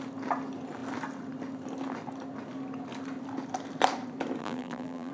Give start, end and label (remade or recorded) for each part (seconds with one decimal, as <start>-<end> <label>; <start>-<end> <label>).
0.0-4.4 recorded; 4.4-5.1 remade